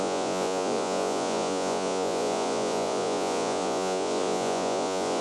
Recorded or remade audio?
remade